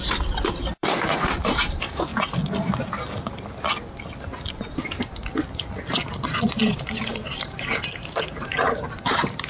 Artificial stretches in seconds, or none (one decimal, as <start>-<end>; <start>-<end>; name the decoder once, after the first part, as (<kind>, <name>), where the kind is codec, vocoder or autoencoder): 0.0-2.1 (vocoder, BigVGAN v2); 4.5-5.2; 6.6-9.5